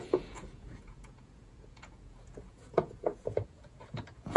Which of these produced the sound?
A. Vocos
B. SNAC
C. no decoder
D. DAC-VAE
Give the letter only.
A